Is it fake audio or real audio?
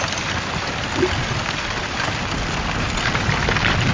real